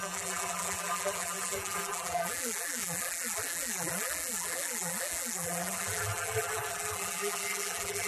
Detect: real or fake fake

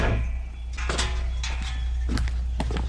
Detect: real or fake real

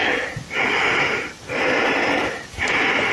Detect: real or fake real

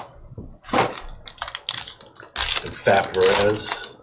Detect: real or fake real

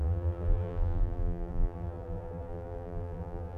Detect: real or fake fake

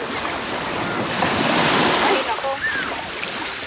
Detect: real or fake real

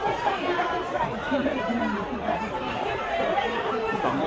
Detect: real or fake fake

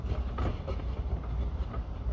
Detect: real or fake fake